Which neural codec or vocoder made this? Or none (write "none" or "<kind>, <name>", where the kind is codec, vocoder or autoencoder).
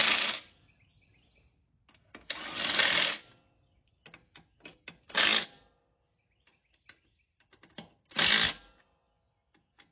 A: none